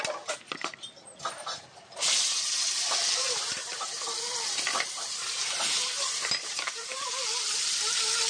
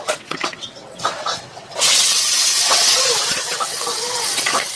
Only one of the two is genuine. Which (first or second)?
first